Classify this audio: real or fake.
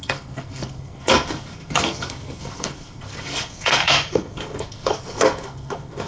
fake